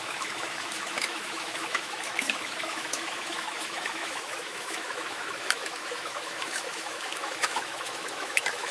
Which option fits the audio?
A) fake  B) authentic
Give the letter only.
A